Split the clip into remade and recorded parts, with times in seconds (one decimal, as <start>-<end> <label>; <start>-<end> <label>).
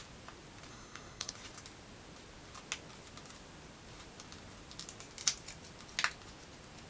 0.0-0.7 recorded; 0.7-1.3 remade; 1.3-6.9 recorded